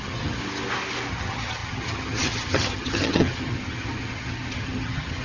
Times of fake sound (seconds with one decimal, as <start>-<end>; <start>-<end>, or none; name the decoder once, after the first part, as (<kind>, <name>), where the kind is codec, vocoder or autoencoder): 0.0-0.4 (vocoder, HiFi-GAN); 1.1-5.2